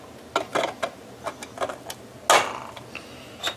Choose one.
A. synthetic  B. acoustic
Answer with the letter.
B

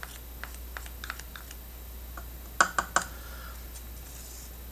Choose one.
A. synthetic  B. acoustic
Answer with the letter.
B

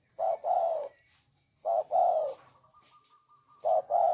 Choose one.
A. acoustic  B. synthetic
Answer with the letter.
B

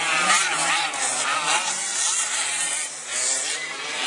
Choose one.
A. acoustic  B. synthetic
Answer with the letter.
B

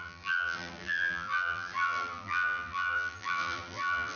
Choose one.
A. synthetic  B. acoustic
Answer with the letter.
A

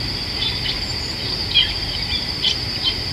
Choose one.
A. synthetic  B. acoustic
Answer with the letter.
A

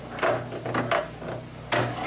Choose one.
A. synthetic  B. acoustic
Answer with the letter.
B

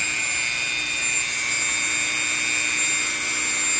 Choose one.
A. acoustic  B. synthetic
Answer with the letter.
A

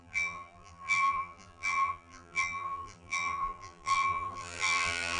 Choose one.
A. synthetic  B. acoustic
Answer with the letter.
A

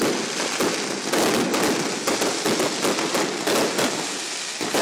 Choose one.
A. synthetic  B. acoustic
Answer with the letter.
B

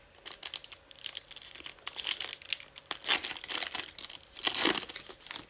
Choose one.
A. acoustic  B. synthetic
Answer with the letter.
A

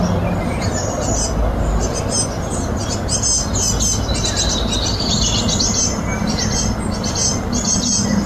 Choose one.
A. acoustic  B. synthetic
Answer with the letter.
A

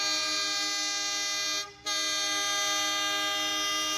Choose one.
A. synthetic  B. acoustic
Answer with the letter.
B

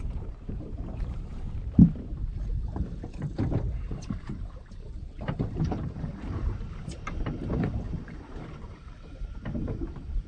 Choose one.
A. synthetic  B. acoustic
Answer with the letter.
A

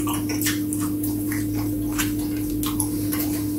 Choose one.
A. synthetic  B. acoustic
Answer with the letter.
B